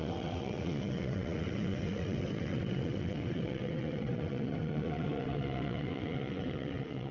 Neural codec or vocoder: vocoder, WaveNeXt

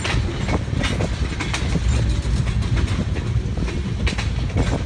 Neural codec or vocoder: none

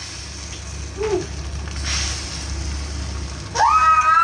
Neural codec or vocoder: none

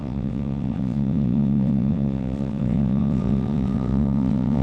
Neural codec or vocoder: vocoder, WaveNeXt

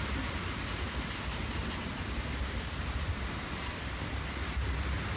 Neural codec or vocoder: none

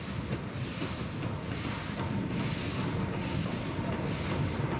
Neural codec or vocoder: none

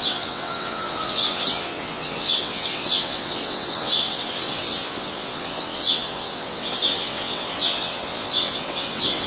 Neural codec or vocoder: vocoder, WaveNeXt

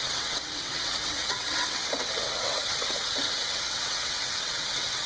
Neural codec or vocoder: vocoder, WaveNeXt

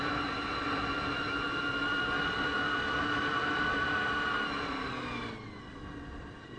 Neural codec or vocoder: none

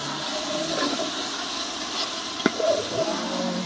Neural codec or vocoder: none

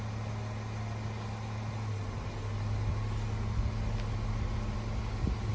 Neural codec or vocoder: none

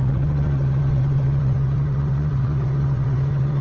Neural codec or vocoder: vocoder, WaveNeXt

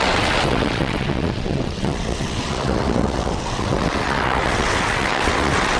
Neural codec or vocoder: vocoder, WaveNeXt